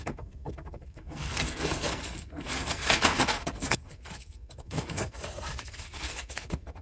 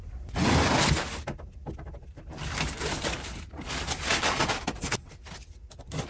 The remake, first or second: first